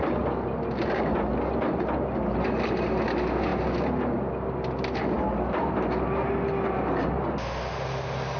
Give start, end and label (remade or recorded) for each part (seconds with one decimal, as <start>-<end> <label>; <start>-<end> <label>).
0.0-8.4 recorded